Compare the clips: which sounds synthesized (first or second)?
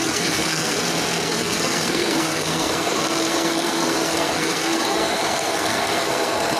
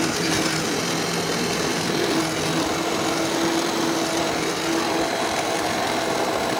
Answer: first